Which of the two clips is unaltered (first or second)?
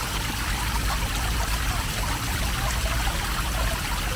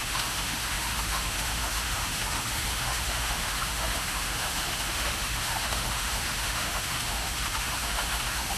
first